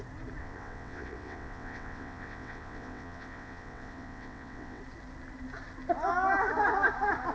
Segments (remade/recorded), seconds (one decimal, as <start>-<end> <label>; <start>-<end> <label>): 0.0-0.4 recorded; 0.4-4.8 remade; 4.8-7.3 recorded

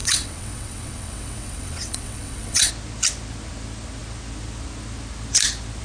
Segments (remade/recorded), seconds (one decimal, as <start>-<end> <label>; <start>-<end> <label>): 0.0-2.7 remade; 2.7-5.8 recorded